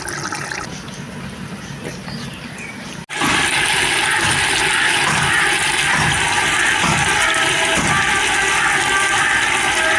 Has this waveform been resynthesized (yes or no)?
no